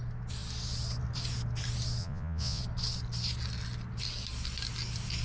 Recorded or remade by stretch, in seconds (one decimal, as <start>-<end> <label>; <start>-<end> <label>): 0.0-2.0 recorded; 2.0-2.6 remade; 2.6-5.2 recorded